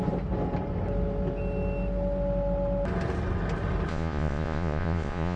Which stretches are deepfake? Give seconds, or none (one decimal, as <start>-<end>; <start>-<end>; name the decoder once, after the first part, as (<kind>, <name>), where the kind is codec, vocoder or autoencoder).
3.9-5.4 (vocoder, Vocos)